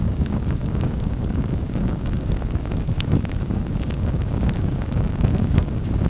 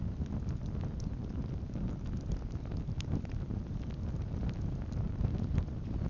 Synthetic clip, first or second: first